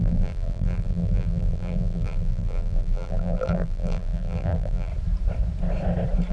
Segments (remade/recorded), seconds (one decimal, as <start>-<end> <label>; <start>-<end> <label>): 0.0-4.9 remade; 4.9-6.3 recorded